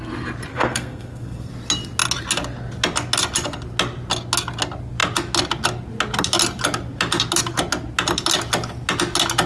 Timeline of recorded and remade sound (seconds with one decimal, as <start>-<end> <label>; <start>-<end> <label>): 0.0-0.5 recorded; 0.5-1.5 remade; 1.5-9.5 recorded